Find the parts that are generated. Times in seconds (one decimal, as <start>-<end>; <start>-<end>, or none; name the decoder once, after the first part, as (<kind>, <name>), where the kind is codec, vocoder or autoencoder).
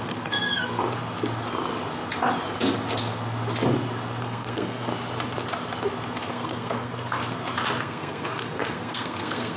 0.0-0.8 (codec, SNAC); 4.2-4.9; 6.3-7.2; 7.8-9.6